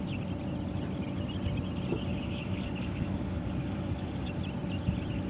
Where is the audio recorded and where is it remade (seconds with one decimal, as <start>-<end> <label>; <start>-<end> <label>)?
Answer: 0.0-2.1 recorded; 2.1-4.3 remade; 4.3-5.3 recorded